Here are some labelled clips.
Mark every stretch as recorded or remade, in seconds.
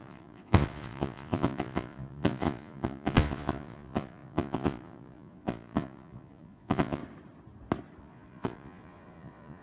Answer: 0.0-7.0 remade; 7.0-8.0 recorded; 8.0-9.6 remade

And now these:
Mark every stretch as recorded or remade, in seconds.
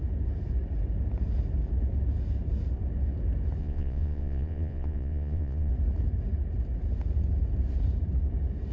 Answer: 0.0-3.6 recorded; 3.6-5.7 remade; 5.7-8.7 recorded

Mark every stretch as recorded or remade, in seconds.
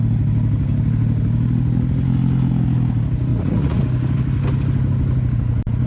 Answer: 0.0-3.3 recorded; 3.3-3.8 remade; 3.8-5.9 recorded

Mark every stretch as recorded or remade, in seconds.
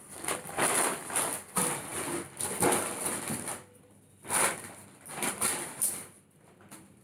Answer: 0.0-7.0 recorded